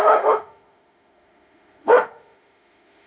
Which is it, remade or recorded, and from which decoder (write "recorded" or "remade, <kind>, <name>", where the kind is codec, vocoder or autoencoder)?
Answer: remade, autoencoder, DAC-VAE